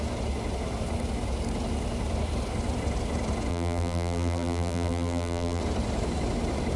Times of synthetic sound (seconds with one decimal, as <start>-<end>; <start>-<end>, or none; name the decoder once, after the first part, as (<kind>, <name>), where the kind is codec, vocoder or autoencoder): 3.5-5.6 (vocoder, BigVGAN v2)